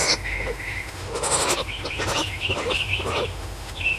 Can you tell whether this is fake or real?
fake